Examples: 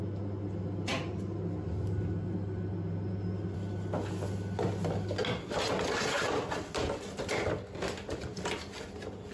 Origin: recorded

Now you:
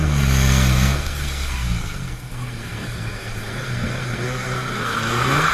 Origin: remade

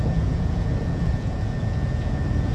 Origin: remade